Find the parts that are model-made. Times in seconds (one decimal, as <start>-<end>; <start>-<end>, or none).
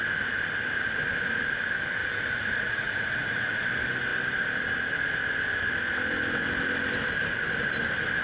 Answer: 2.0-3.6